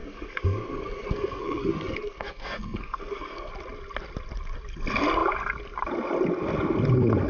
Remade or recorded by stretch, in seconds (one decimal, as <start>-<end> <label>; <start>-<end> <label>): 0.0-3.5 remade; 3.5-7.3 recorded